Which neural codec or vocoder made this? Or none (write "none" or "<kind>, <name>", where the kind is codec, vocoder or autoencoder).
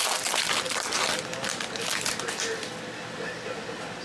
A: none